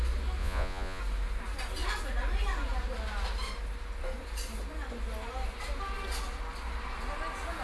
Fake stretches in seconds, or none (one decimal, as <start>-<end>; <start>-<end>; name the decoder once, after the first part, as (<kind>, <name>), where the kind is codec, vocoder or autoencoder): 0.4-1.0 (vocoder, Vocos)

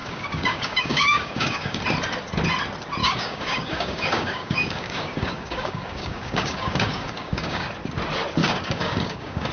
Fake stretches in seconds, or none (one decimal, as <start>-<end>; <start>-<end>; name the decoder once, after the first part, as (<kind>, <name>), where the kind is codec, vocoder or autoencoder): 0.0-1.8 (codec, DAC); 3.0-7.7; 8.4-9.5

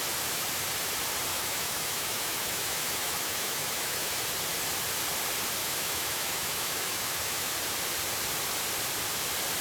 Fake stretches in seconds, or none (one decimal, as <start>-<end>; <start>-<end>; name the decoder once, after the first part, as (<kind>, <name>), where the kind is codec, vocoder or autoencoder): 1.3-4.2 (autoencoder, DAC-VAE); 5.6-7.5

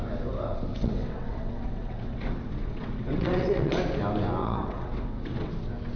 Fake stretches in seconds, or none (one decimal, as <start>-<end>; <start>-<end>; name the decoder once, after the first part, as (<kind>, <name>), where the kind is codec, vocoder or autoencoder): 0.7-3.8 (vocoder, WaveNeXt); 4.4-5.5

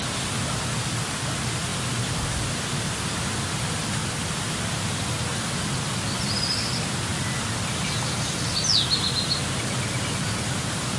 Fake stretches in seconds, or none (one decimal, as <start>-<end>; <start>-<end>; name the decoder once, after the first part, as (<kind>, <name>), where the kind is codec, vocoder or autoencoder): none

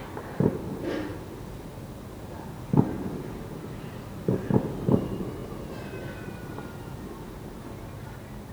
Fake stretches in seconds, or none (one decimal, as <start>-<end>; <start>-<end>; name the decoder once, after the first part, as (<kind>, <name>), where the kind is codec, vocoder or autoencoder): none

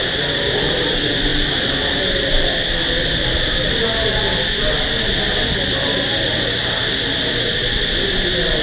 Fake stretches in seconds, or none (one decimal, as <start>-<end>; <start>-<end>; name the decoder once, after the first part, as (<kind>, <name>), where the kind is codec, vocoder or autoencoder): none